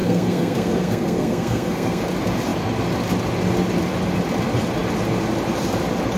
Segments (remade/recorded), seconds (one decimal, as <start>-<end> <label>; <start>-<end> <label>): 0.0-2.0 remade; 2.0-6.2 recorded